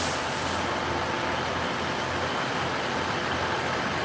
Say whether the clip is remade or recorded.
recorded